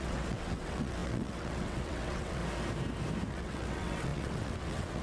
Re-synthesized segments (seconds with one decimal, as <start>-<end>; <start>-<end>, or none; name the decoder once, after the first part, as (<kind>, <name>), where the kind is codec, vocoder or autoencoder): 0.0-2.4 (vocoder, WaveNeXt); 3.3-5.0